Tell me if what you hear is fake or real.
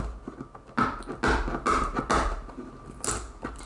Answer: real